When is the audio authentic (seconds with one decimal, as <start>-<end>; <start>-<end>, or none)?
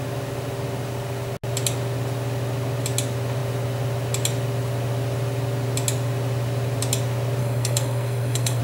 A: 0.0-7.4